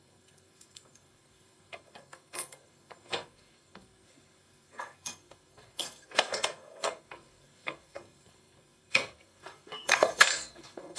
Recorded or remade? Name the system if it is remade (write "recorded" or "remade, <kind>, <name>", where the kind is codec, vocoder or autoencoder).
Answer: remade, codec, SNAC